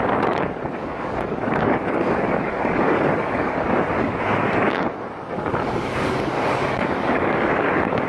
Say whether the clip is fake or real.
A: fake